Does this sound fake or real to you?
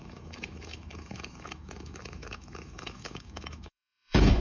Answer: fake